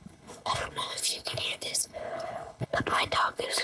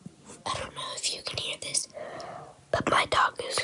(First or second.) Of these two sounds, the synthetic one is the first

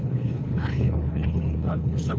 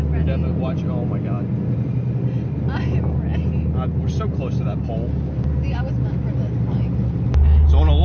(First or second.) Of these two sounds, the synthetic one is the first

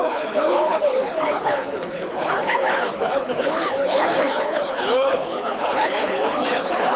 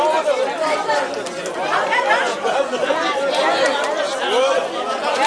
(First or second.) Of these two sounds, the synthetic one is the first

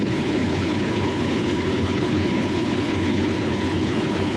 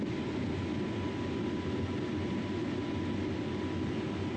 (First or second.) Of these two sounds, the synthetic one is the first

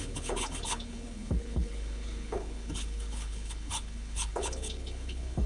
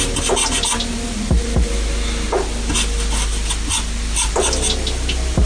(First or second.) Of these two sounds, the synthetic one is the first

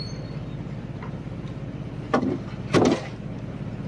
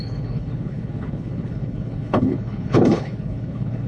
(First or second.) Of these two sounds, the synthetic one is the second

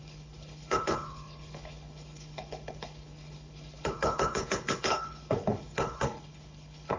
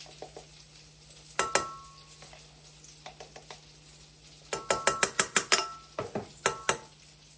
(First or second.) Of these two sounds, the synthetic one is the first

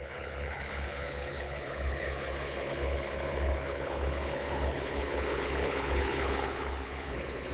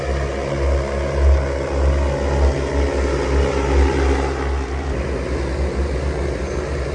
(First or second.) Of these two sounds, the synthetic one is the first